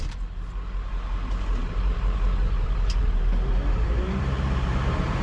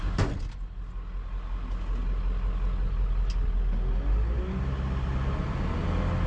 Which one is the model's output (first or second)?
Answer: first